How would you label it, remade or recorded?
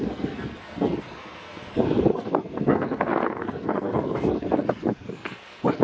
remade